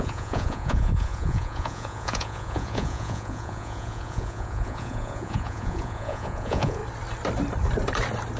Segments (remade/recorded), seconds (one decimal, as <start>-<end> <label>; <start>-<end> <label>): 0.0-6.8 remade; 6.8-8.4 recorded